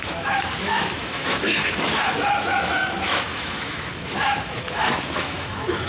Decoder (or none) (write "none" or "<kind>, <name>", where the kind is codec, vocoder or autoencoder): autoencoder, DAC-VAE